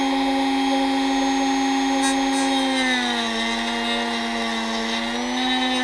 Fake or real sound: real